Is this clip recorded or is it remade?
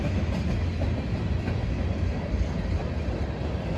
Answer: recorded